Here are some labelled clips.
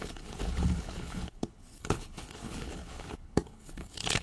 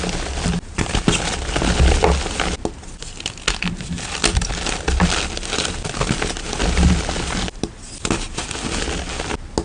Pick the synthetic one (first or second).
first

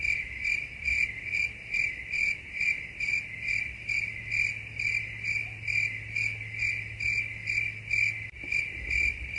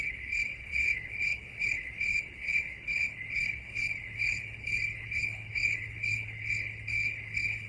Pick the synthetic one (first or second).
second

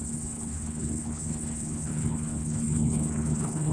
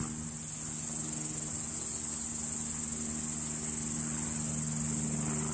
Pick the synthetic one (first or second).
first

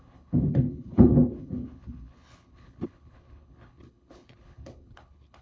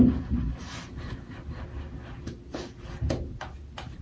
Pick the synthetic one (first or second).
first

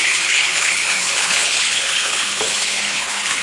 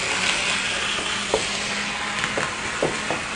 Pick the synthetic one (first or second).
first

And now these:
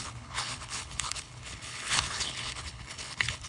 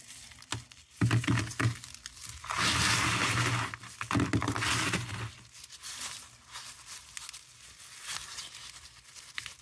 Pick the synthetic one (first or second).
first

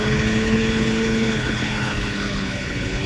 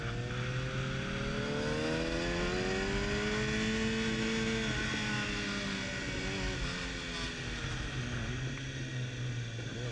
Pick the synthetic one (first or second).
first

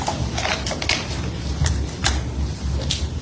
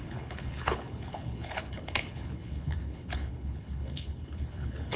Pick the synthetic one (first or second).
second